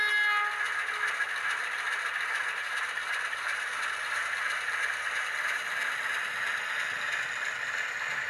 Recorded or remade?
recorded